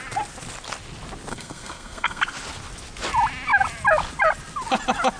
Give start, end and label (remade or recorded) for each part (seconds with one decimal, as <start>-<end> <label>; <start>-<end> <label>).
0.0-1.3 recorded; 1.3-2.2 remade; 2.2-5.2 recorded